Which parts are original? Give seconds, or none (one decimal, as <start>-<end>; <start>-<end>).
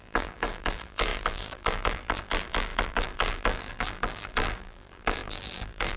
none